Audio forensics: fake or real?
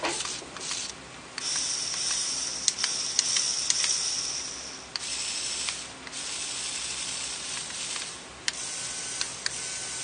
real